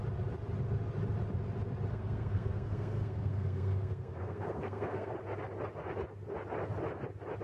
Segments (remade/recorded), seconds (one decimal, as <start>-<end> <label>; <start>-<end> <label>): 0.0-1.9 recorded; 1.9-5.1 remade; 5.1-7.4 recorded